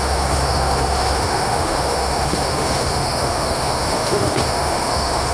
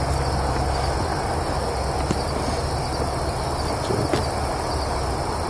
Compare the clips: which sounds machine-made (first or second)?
first